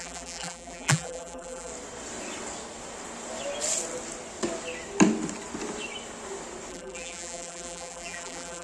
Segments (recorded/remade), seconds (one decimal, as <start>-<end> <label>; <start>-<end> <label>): 0.0-1.7 remade; 1.7-6.7 recorded; 6.7-8.6 remade